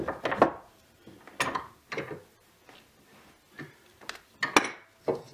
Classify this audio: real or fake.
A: real